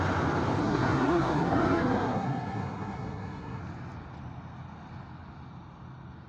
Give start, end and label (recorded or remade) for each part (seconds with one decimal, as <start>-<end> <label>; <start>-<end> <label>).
0.0-0.6 recorded; 0.6-3.6 remade; 3.6-6.3 recorded